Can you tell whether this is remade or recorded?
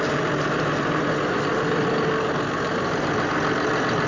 recorded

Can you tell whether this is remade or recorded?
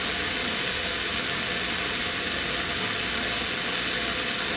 recorded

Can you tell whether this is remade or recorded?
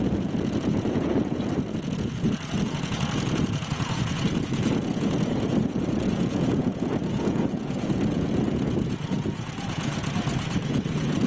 remade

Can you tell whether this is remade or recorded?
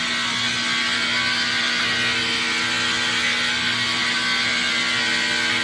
recorded